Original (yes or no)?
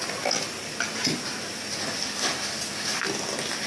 yes